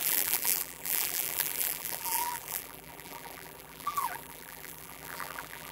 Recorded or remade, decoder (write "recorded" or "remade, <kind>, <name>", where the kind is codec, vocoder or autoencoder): remade, vocoder, BigVGAN v2